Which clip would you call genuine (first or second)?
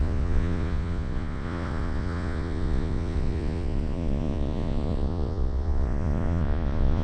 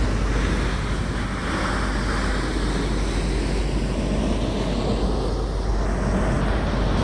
second